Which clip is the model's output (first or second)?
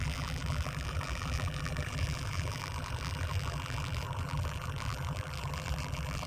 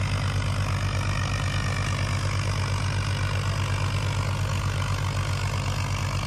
first